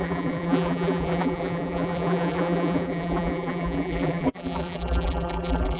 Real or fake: fake